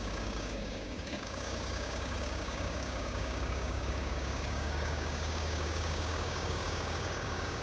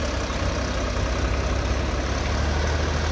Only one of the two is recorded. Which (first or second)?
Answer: second